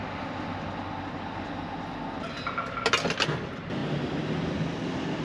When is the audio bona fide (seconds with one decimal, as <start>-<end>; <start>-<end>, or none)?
0.0-5.2